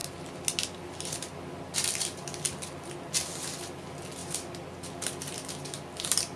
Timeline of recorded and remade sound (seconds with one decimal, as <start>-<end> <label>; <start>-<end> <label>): 0.0-6.4 recorded